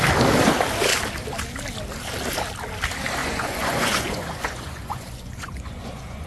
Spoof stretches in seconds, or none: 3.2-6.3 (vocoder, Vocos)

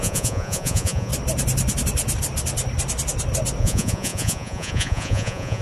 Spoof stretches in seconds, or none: 0.0-1.1 (vocoder, Vocos); 3.6-5.6

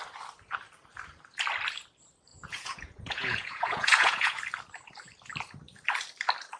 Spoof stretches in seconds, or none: 2.3-4.4 (vocoder, Vocos)

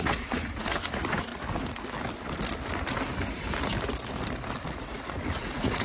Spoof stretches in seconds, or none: 0.0-1.3 (vocoder, Vocos); 4.8-5.8